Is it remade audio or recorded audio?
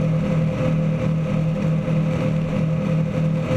recorded